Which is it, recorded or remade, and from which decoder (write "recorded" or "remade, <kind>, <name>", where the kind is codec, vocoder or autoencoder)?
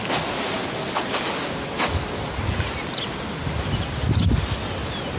recorded